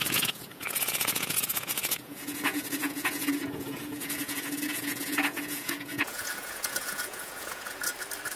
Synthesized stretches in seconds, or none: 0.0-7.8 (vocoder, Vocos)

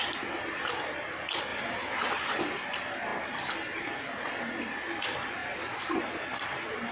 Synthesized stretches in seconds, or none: 0.0-3.1 (vocoder, BigVGAN v2); 5.0-5.4; 6.0-6.9

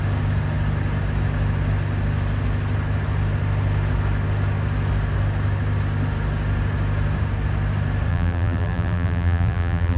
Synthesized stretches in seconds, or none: 8.1-10.0 (vocoder, BigVGAN v2)

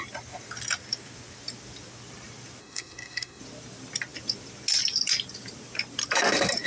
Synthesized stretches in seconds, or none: 2.6-3.4 (codec, SNAC)

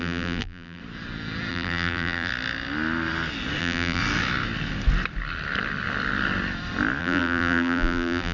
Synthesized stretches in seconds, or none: 0.0-0.8 (vocoder, BigVGAN v2); 1.5-2.3; 3.6-4.0; 7.0-8.3

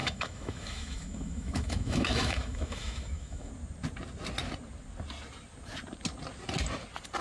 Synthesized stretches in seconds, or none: 0.0-3.5 (autoencoder, DAC-VAE)